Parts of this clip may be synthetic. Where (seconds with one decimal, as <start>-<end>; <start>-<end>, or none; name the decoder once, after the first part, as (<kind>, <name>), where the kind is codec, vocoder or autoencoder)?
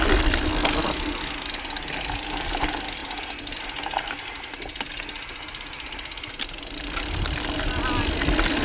none